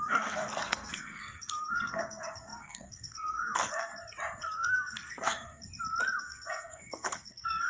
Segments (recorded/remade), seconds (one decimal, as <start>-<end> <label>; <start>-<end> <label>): 0.0-3.9 remade; 3.9-4.4 recorded; 4.4-5.6 remade; 5.6-6.2 recorded; 6.2-7.7 remade